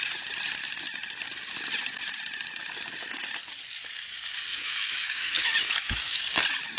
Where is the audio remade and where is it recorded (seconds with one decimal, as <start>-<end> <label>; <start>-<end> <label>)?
0.0-4.5 recorded; 4.5-6.2 remade; 6.2-6.8 recorded